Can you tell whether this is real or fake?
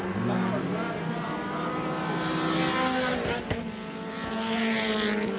real